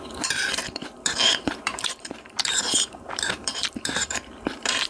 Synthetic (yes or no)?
yes